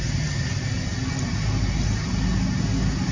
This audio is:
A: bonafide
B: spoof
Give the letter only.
A